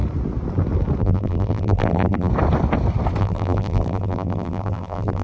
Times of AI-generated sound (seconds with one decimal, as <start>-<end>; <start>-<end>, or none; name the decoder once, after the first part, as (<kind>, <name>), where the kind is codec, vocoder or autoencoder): 1.0-2.3 (vocoder, BigVGAN v2); 3.2-5.2